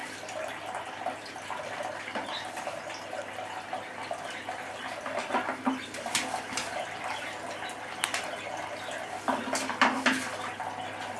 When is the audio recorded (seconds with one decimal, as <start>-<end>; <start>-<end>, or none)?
0.0-11.2